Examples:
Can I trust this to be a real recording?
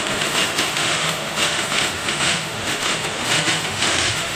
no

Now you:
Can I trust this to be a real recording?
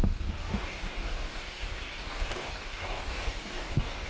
no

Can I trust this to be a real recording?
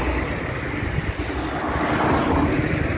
yes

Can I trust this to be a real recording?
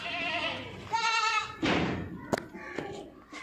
yes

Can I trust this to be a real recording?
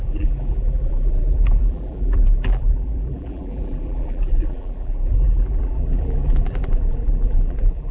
no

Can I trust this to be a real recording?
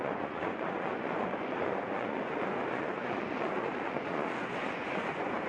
no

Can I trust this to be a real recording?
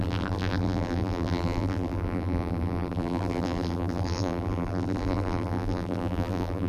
no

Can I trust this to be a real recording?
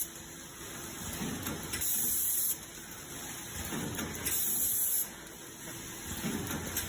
yes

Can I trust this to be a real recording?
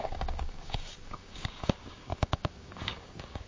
no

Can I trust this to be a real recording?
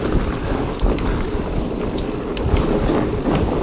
yes